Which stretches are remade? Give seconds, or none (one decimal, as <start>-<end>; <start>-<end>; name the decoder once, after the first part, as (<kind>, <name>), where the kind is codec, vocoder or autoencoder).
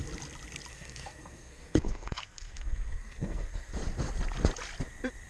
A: 0.7-3.7 (codec, SNAC)